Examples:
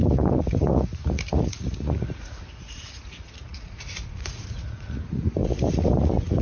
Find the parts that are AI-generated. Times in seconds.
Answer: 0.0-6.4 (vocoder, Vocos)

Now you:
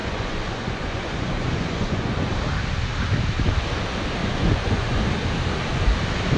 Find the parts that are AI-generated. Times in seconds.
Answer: 0.0-2.3 (vocoder, Vocos); 4.2-5.0

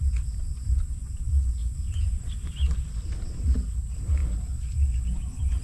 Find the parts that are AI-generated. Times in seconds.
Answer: 0.4-1.1 (vocoder, Vocos); 1.6-2.6

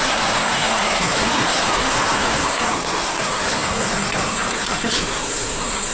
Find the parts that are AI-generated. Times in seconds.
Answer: 0.0-5.9 (codec, SNAC)

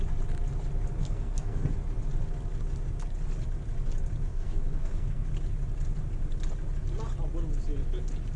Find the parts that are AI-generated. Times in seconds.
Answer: 1.0-1.7 (codec, SNAC); 4.3-5.3